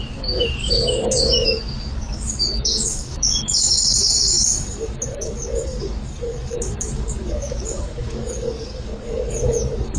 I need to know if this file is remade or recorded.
remade